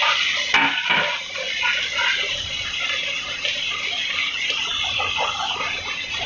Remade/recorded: recorded